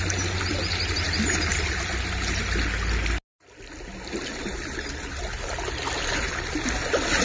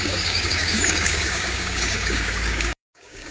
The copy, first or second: second